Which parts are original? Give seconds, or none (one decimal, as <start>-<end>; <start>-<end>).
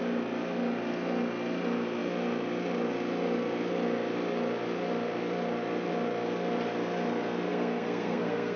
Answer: 0.0-7.5